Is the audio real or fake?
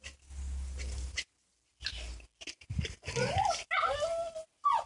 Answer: real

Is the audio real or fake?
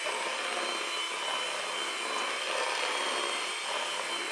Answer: real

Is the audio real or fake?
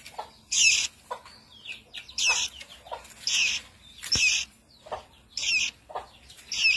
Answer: real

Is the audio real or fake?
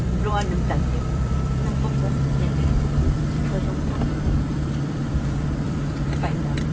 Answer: fake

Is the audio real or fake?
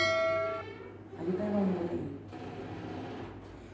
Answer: real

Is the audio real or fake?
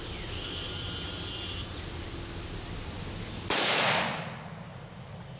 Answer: real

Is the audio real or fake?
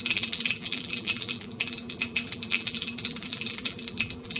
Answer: fake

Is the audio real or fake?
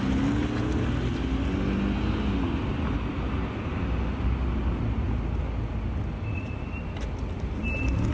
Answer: real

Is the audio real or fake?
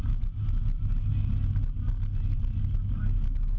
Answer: real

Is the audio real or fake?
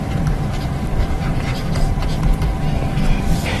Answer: fake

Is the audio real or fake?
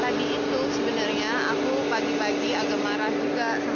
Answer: real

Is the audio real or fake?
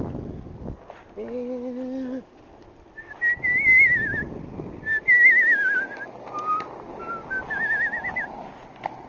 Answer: real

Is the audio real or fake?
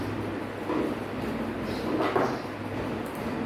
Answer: real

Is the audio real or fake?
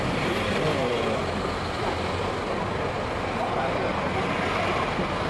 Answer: real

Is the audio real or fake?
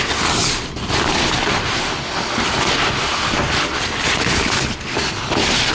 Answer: real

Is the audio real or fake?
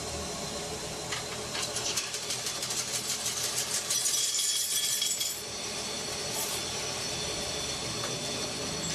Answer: fake